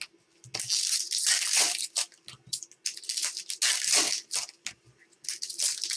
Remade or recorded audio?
recorded